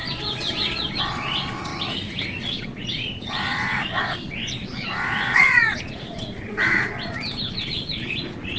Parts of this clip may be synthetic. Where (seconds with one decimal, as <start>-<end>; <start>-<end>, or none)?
0.0-1.7; 2.4-8.6

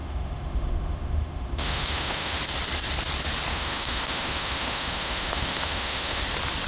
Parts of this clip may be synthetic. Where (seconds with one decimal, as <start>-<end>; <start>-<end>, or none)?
0.0-2.4; 3.5-6.2